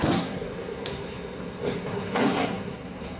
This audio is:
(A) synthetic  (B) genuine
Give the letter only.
A